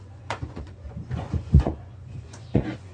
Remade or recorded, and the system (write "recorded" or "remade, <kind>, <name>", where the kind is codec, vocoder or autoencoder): remade, vocoder, Vocos